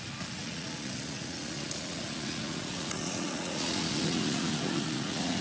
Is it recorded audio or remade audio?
remade